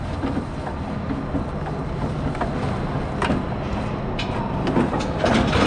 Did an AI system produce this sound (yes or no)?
no